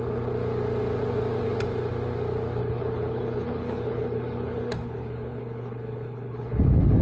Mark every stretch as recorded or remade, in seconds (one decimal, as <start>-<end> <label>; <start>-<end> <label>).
0.0-2.6 recorded; 2.6-6.6 remade; 6.6-7.0 recorded